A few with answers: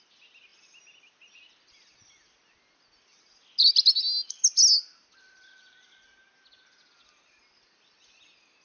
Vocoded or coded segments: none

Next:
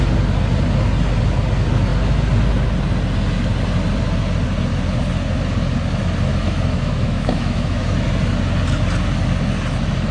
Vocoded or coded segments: 6.3-7.8 (autoencoder, DAC-VAE)

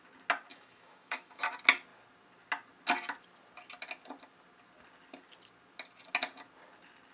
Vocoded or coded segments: 0.5-1.4 (autoencoder, DAC-VAE)

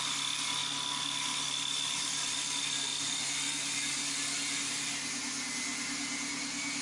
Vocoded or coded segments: none

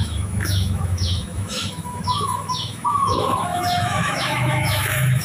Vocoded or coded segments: 0.0-5.2 (autoencoder, DAC-VAE)

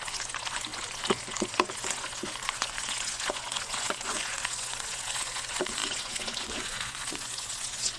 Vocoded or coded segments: 0.0-8.0 (vocoder, Vocos)

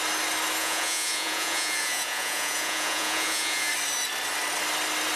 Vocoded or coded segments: 0.6-3.7 (vocoder, Vocos)

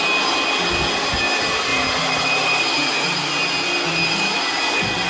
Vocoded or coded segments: 1.7-2.6 (vocoder, BigVGAN v2)